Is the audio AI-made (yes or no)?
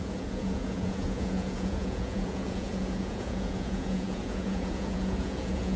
yes